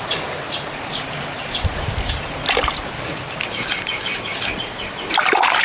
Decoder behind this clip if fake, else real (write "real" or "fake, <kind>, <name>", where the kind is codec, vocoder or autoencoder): real